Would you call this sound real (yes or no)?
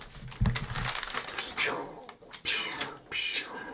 yes